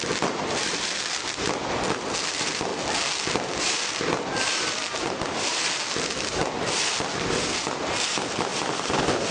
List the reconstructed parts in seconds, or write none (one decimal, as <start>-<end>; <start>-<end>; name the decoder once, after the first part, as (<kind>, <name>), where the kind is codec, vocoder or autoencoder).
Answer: 0.0-2.7 (vocoder, BigVGAN v2); 3.6-9.3